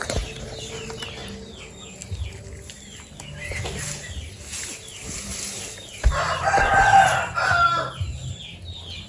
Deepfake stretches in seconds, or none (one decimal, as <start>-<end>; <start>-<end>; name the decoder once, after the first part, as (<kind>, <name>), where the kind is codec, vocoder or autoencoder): none